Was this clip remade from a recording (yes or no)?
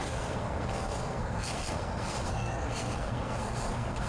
yes